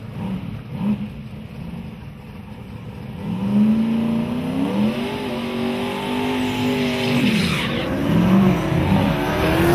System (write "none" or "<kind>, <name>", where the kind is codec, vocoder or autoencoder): none